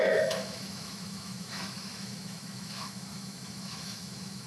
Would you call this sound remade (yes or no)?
yes